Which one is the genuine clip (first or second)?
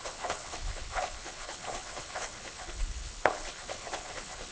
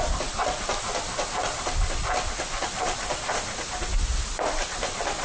second